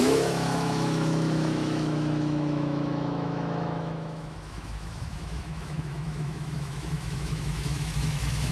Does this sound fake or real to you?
fake